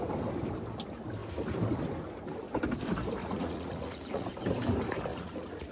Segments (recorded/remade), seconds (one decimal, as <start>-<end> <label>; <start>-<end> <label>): 0.0-3.2 recorded; 3.2-4.3 remade; 4.3-5.1 recorded; 5.1-5.7 remade